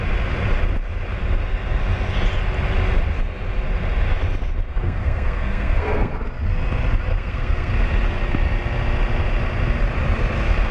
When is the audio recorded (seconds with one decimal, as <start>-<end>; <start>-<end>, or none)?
0.0-4.7; 6.3-7.1; 7.7-10.7